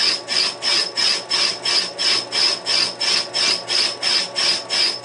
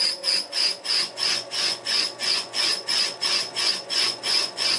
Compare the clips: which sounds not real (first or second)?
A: second